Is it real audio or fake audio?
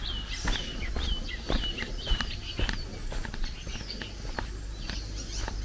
real